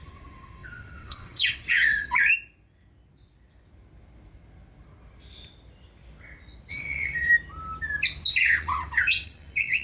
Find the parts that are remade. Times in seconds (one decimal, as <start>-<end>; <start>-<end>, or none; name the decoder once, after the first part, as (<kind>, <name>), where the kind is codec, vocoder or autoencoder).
0.0-2.3 (vocoder, WaveNeXt); 6.7-7.3; 8.3-9.8